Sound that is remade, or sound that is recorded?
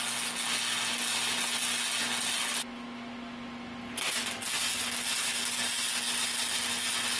recorded